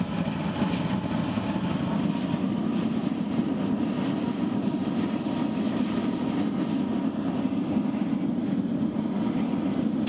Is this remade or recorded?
recorded